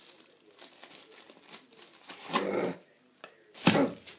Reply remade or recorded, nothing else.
recorded